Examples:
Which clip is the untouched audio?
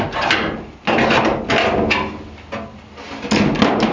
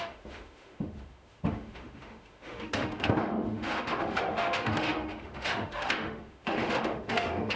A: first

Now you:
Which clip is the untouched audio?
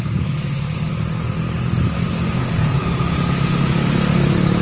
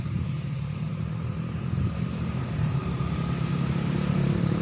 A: first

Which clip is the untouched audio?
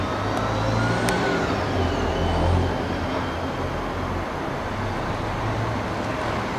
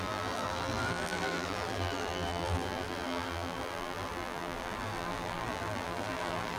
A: first